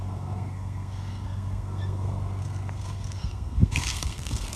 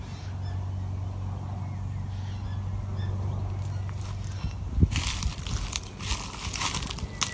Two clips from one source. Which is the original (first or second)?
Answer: second